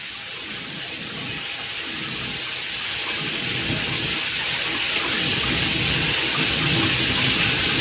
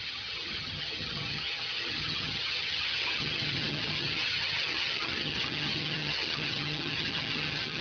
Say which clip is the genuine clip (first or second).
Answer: first